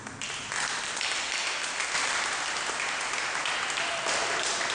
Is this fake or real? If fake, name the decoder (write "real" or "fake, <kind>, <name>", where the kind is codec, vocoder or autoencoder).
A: real